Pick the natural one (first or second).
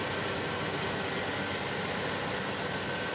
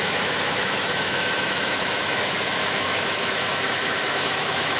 first